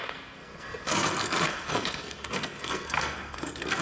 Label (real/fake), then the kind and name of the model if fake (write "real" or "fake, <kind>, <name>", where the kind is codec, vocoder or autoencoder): fake, codec, SNAC